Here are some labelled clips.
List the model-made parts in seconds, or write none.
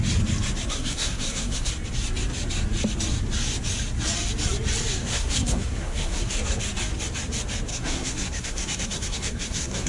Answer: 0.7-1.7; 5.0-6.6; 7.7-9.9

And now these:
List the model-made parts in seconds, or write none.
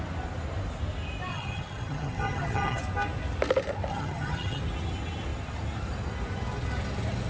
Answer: 1.3-2.8; 3.9-4.6